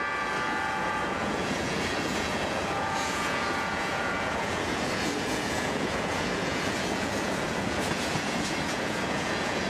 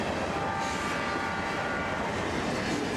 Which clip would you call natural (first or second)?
second